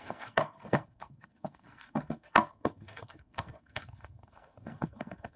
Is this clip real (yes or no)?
no